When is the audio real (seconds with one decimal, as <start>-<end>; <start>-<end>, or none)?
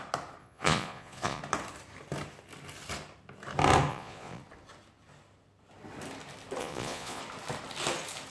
0.0-0.4; 1.4-3.9; 4.4-6.6; 7.2-8.3